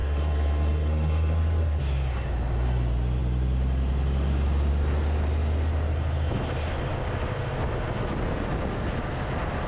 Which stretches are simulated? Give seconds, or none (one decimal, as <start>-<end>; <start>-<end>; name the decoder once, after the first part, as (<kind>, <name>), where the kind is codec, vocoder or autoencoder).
0.0-1.8 (codec, SNAC)